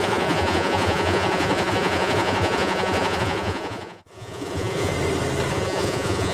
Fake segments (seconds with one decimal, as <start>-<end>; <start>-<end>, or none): 0.0-4.9; 5.5-6.3